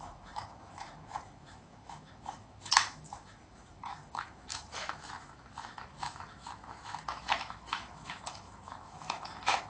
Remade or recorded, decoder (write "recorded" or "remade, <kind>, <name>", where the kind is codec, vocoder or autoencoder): remade, autoencoder, DAC-VAE